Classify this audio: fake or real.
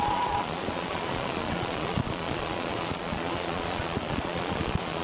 fake